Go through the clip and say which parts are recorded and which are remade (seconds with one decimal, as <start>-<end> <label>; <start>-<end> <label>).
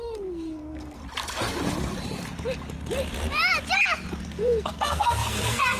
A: 0.0-1.0 remade; 1.0-4.2 recorded; 4.2-5.8 remade